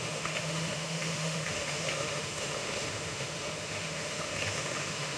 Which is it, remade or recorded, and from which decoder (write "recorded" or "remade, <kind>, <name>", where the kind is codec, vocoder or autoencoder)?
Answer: remade, autoencoder, DAC-VAE